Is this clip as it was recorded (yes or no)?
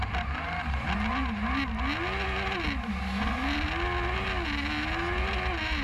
yes